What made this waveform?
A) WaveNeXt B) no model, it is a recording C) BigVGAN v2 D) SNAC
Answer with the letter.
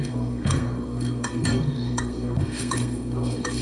D